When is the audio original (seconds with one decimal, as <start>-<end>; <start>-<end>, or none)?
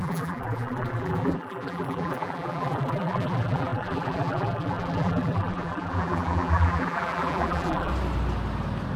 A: 7.9-9.0